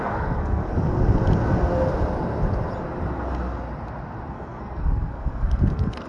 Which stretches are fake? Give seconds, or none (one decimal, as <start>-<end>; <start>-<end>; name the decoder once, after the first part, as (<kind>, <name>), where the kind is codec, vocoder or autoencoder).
0.0-0.6 (codec, SNAC); 4.3-6.1